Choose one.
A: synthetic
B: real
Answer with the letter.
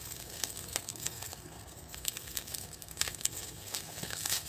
A